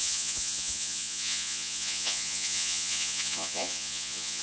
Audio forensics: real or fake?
fake